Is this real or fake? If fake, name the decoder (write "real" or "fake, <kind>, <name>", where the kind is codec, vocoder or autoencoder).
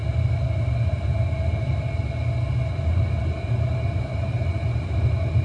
real